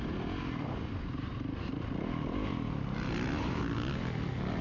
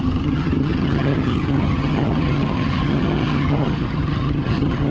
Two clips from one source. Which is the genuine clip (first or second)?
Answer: first